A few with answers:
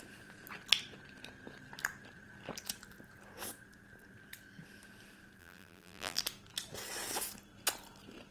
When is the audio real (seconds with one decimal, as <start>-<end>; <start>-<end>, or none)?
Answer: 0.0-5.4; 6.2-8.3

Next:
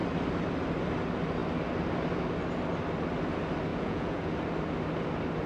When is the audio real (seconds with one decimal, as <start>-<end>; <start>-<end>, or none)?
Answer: 0.0-3.7; 4.3-5.5

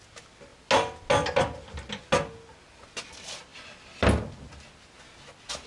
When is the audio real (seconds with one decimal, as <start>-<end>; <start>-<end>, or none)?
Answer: 0.0-5.7